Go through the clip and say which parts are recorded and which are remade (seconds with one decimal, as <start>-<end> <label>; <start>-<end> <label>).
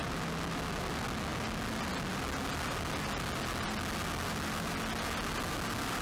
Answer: 0.0-6.0 recorded